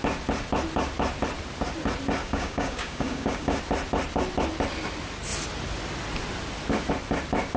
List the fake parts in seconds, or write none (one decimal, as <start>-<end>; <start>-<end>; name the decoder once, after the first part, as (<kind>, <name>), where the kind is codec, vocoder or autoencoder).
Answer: 2.2-3.6 (codec, DAC)